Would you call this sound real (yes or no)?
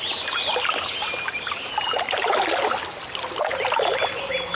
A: yes